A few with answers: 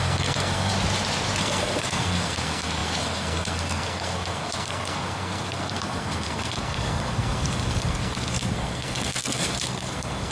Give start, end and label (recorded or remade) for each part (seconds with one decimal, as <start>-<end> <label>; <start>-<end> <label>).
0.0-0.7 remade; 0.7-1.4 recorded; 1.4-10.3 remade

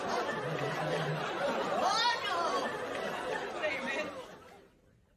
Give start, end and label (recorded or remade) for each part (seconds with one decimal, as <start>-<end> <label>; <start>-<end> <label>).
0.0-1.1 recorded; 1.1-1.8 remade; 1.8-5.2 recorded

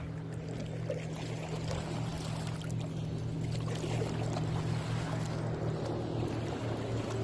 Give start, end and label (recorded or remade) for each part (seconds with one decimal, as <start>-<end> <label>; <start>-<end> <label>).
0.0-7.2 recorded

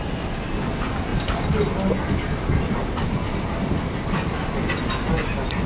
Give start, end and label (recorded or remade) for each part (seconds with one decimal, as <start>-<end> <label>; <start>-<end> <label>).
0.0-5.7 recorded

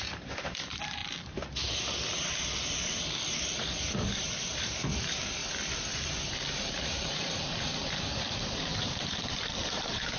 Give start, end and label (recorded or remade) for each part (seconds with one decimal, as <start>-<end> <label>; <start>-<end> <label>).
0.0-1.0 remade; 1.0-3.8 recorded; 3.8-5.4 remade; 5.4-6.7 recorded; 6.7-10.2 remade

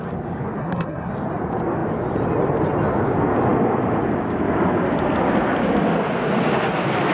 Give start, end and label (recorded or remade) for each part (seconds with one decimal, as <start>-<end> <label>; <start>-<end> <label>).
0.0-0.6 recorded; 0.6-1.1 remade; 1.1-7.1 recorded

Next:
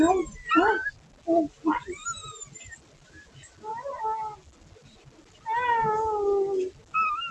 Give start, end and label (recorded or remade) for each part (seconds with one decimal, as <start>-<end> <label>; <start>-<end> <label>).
0.0-7.3 recorded